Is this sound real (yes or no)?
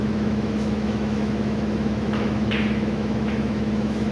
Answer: no